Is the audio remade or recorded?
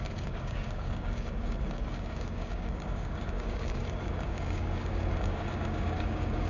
remade